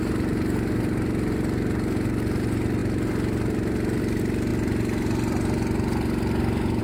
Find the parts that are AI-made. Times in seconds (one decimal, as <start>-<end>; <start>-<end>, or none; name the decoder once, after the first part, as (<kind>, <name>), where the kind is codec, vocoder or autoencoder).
none

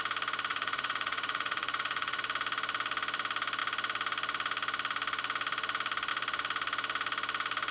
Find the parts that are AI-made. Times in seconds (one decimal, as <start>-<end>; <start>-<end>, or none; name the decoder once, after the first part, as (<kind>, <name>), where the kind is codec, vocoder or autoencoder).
0.5-2.2 (vocoder, Vocos)

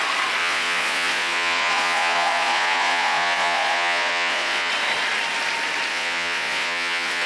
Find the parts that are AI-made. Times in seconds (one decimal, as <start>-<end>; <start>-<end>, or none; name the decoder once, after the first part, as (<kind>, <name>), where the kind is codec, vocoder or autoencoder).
0.4-4.7 (vocoder, Vocos); 5.9-7.3

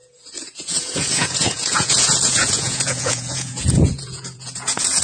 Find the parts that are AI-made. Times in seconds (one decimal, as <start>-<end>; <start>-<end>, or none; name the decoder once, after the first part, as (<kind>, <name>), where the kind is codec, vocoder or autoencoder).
0.0-5.0 (vocoder, Vocos)

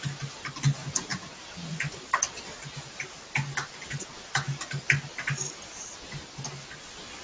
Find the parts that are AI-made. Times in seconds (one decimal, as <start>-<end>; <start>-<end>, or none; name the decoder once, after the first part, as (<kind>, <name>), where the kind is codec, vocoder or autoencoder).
none

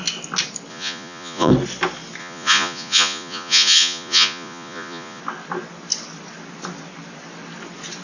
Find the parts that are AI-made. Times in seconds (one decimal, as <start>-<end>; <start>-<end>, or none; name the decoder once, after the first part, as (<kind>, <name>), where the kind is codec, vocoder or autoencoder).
0.7-1.5 (vocoder, Vocos); 2.2-5.2

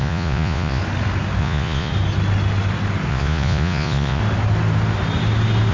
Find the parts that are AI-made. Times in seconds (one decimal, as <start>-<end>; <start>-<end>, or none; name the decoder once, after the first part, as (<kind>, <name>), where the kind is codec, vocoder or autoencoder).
0.0-0.8 (vocoder, Vocos); 1.4-1.9; 3.1-4.2